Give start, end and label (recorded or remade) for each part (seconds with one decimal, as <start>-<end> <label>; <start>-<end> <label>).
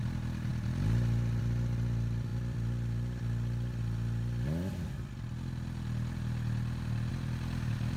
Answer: 0.0-2.3 remade; 2.3-7.1 recorded; 7.1-8.0 remade